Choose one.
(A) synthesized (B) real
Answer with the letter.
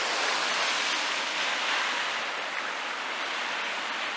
B